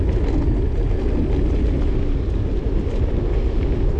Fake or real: real